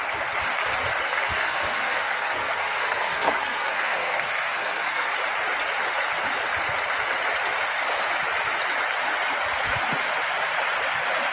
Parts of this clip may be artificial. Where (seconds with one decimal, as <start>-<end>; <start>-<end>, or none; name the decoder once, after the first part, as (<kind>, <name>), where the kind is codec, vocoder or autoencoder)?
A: 1.1-5.1 (codec, SNAC)